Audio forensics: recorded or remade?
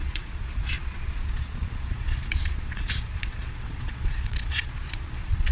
remade